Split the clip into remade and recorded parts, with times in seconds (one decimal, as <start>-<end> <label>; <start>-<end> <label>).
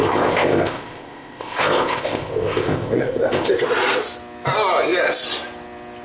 0.0-3.6 remade; 3.6-6.0 recorded